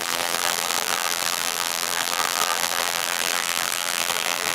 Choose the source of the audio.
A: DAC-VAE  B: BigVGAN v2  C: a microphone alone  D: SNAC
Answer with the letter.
B